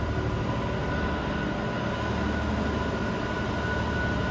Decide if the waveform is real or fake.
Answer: real